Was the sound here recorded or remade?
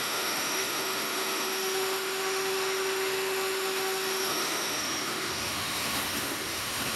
remade